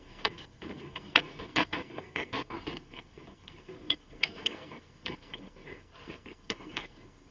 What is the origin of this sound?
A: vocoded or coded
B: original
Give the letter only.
A